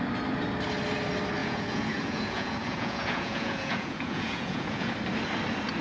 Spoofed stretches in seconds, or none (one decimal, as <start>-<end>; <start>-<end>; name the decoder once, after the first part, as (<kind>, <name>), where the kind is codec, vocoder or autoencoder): 1.4-4.9 (vocoder, Vocos)